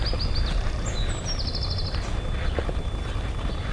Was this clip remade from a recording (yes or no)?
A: no